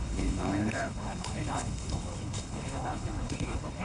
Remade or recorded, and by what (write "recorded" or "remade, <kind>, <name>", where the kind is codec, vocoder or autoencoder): remade, codec, HILCodec